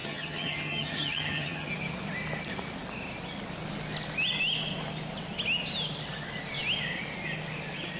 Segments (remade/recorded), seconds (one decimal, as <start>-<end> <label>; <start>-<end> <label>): 0.0-1.7 remade; 1.7-8.0 recorded